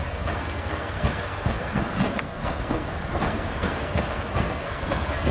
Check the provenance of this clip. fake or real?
fake